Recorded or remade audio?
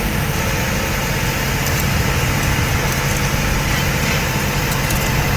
recorded